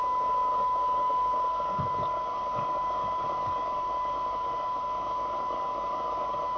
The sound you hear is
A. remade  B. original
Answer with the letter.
A